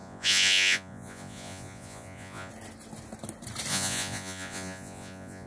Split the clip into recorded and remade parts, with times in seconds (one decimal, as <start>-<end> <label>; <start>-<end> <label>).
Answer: 0.0-2.5 remade; 2.5-3.7 recorded; 3.7-5.5 remade